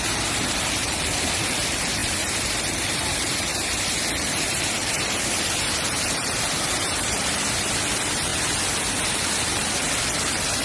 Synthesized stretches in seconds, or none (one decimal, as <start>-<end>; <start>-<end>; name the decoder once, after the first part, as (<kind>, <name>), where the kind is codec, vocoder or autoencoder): 0.0-8.3 (vocoder, BigVGAN v2); 9.1-10.6